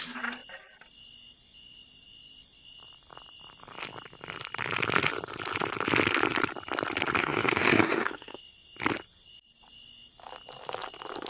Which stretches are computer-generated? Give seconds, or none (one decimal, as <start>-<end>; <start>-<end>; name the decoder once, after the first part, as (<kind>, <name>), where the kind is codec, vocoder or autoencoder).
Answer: 7.2-8.4 (autoencoder, DAC-VAE)